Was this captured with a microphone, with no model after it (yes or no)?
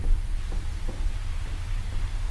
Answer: yes